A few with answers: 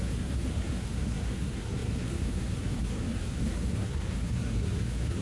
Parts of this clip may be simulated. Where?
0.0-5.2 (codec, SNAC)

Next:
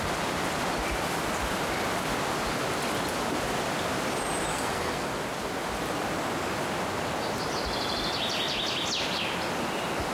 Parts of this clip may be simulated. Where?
4.5-5.1 (codec, SNAC)